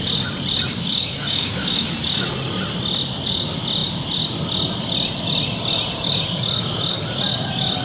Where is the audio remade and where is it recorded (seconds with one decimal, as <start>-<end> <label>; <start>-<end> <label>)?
0.0-0.7 recorded; 0.7-1.9 remade; 1.9-7.8 recorded